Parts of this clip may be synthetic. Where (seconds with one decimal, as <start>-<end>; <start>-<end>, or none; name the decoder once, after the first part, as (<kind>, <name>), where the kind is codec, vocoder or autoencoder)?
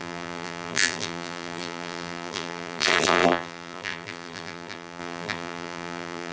0.0-6.3 (vocoder, BigVGAN v2)